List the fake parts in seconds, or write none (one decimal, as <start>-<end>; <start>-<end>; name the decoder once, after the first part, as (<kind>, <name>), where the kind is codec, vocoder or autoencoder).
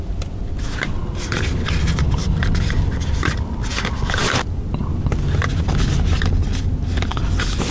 2.2-3.4 (vocoder, BigVGAN v2)